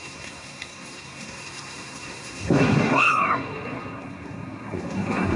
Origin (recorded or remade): remade